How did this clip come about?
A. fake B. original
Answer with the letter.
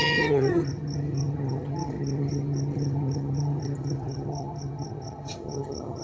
A